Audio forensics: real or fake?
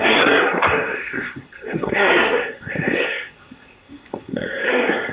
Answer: fake